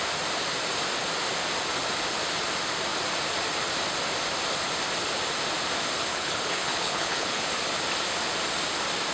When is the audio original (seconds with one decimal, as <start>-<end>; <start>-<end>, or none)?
0.0-6.1; 7.5-9.1